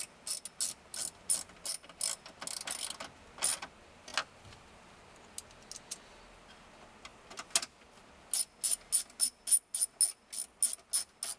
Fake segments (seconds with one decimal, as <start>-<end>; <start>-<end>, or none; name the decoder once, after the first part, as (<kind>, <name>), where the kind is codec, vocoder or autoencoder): none